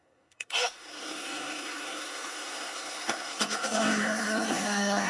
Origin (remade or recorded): remade